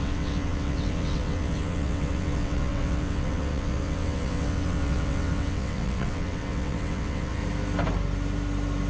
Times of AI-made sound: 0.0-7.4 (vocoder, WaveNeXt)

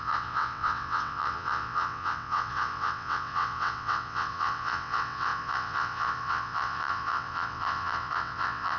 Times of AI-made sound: 0.0-8.8 (vocoder, WaveNeXt)

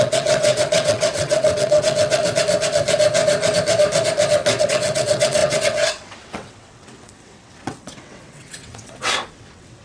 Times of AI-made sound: 0.0-2.2 (vocoder, WaveNeXt); 4.6-9.8

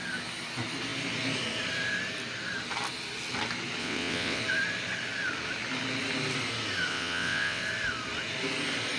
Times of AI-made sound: 3.8-4.4 (vocoder, WaveNeXt); 6.9-7.6

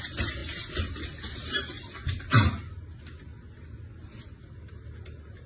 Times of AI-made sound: none

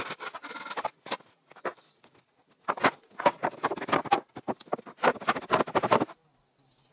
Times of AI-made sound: none

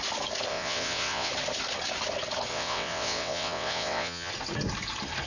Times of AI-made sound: 0.5-1.3 (vocoder, WaveNeXt); 2.5-4.3